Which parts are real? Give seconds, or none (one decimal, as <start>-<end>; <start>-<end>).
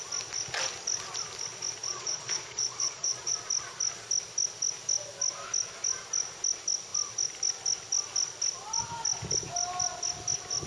0.0-1.9; 3.3-10.7